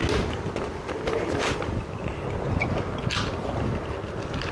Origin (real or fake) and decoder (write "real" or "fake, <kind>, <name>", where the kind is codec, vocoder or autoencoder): real